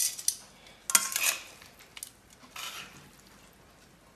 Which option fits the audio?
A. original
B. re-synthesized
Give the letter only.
A